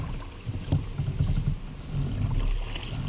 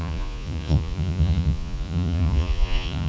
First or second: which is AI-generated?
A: second